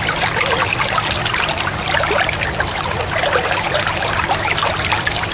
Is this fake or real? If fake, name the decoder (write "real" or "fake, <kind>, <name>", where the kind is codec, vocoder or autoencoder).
real